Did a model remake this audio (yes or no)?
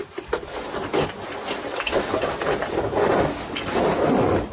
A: no